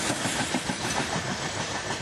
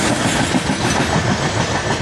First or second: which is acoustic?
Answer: second